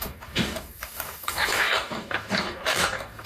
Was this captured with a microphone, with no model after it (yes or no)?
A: no